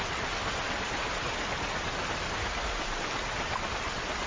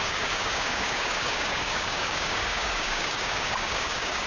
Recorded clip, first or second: first